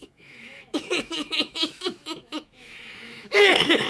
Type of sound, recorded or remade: remade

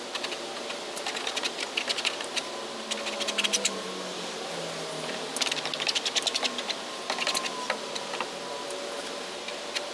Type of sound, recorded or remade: recorded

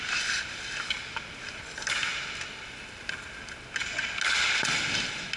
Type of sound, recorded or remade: recorded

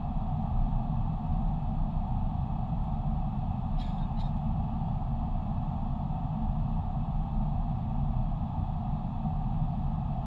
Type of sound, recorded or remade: recorded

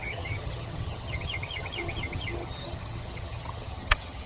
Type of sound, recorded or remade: remade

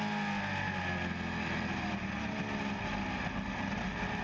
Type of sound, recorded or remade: recorded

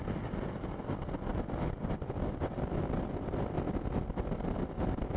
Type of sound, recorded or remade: recorded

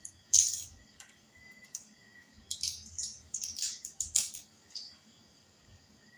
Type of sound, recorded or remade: remade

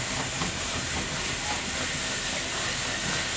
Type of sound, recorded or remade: recorded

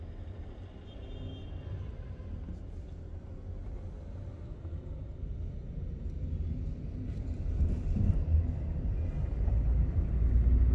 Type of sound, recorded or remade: recorded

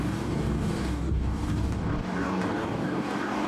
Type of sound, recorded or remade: remade